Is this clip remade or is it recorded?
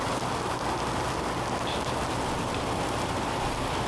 recorded